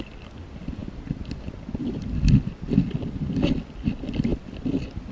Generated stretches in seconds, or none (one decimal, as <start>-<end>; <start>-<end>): none